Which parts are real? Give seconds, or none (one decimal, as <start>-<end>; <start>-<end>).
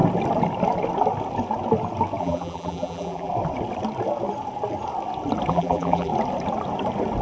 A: 0.0-2.2; 3.3-5.5; 6.1-7.2